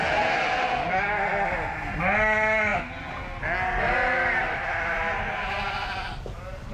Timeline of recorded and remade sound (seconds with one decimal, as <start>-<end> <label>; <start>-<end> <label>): 0.0-6.7 recorded